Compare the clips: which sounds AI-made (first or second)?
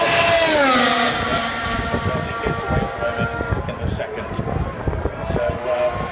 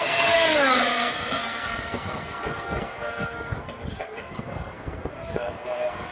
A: second